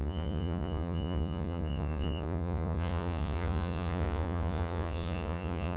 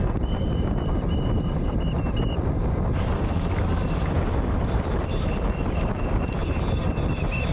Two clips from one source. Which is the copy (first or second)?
first